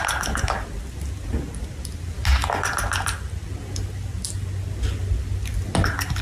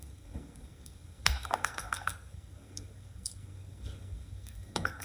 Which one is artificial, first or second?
second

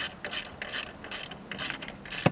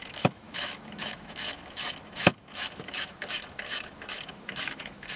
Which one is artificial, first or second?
second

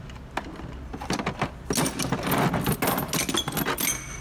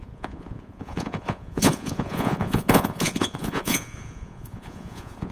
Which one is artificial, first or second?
second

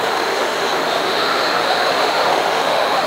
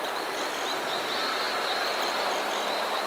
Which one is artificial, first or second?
first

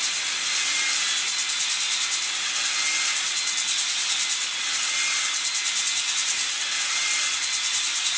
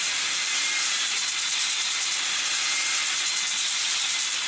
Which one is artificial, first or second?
second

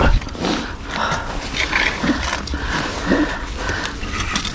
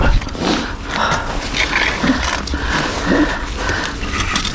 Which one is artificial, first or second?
first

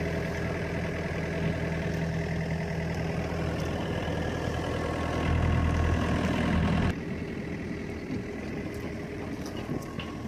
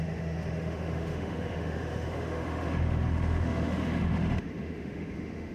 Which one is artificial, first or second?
second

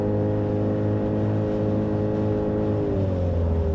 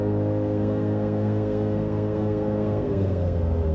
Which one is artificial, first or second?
second